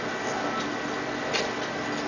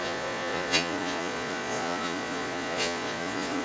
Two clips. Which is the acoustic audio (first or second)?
first